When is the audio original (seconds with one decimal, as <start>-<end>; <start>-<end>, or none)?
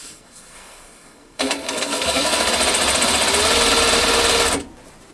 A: 2.5-5.1